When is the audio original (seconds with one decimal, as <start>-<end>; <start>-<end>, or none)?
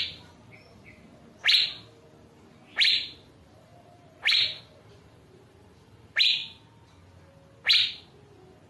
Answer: 1.1-2.5; 6.4-8.7